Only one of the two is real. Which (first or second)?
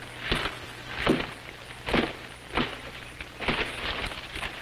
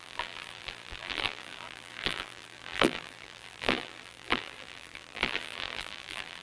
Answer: first